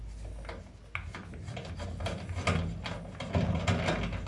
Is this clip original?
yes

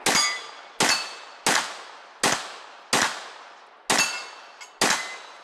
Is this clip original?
yes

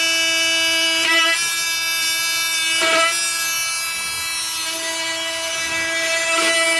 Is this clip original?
yes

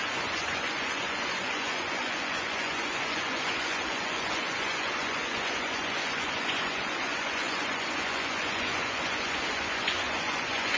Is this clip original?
no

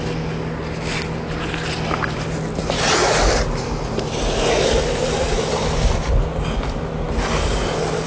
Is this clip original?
yes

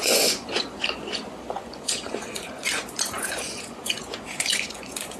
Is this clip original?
no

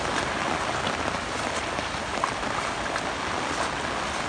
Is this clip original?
yes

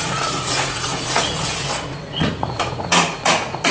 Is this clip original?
no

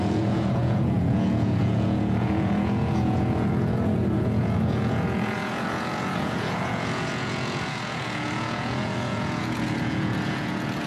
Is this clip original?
no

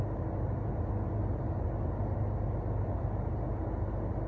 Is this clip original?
yes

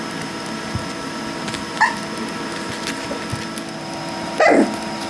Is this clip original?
yes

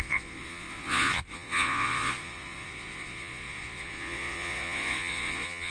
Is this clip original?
no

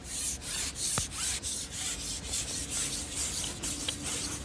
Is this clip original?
yes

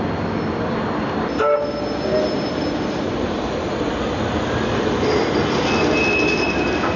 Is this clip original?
yes